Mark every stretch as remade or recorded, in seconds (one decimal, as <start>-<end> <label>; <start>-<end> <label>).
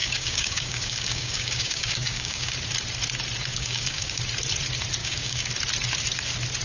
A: 0.0-2.5 remade; 2.5-3.5 recorded; 3.5-4.2 remade; 4.2-5.0 recorded; 5.0-5.5 remade; 5.5-6.6 recorded